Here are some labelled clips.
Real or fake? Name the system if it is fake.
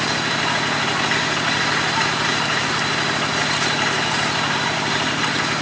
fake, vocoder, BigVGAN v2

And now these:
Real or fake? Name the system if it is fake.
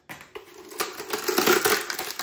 real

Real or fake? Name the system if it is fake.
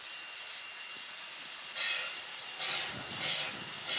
real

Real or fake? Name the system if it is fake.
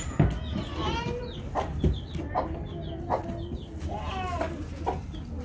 real